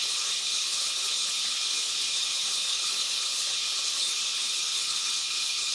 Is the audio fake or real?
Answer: fake